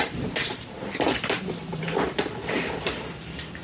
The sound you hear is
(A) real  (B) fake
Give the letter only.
B